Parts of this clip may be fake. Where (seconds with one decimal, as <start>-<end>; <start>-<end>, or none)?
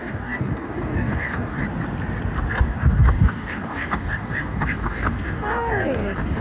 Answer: 0.0-1.6; 2.5-6.4